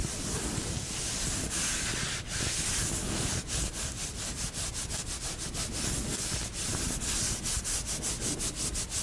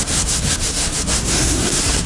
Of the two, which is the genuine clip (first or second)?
first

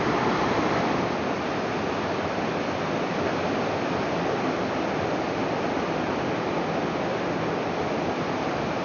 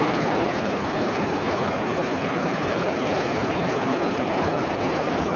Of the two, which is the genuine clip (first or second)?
first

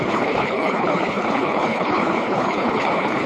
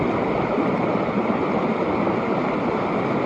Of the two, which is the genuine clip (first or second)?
second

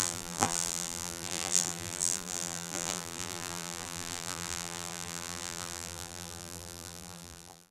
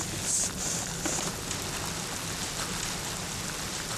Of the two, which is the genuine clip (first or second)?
second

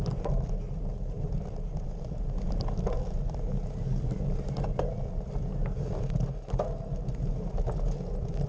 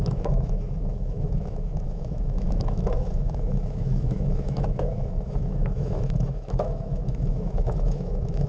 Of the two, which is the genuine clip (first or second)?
first